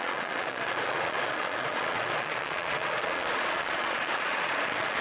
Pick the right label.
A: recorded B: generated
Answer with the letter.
B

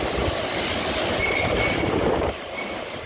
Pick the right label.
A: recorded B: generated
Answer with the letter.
A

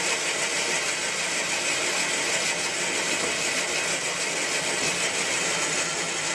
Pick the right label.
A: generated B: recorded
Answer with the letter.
B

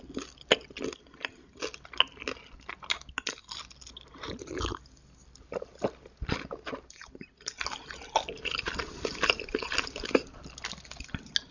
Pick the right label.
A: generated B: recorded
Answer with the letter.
B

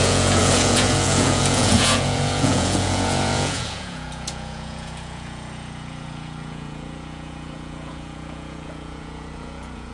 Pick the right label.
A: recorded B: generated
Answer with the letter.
B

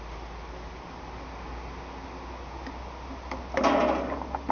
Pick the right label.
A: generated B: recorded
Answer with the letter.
B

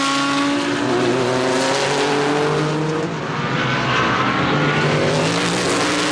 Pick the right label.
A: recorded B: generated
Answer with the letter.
A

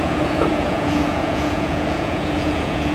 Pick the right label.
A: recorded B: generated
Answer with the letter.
B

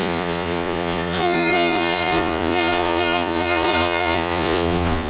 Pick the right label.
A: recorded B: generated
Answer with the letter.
B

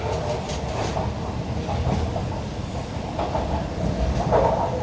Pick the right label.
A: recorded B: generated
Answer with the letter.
A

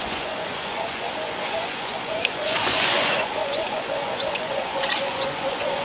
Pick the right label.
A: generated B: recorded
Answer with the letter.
A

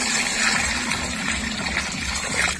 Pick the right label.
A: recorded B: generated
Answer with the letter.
A